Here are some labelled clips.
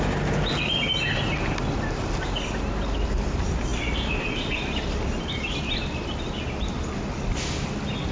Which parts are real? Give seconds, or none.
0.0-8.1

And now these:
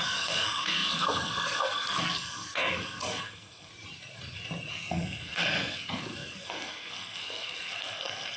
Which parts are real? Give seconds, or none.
3.7-4.7

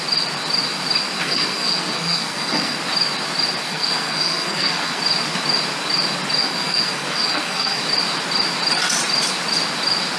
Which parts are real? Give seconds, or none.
0.0-1.2; 2.8-3.6; 5.0-6.4; 7.8-10.2

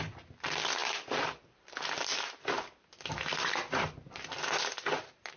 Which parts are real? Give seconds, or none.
0.0-5.4